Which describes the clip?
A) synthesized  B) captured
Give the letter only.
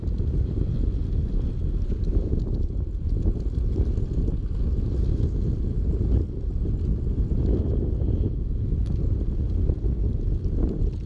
B